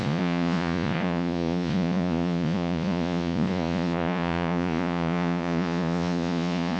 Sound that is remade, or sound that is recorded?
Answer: remade